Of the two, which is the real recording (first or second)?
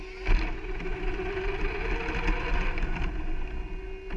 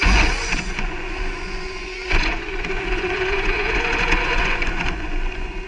first